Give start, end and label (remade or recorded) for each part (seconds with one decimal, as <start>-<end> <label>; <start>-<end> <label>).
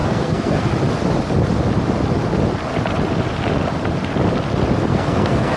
0.0-0.7 remade; 0.7-4.9 recorded; 4.9-5.6 remade